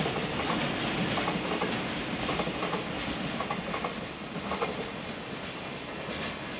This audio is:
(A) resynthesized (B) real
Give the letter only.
B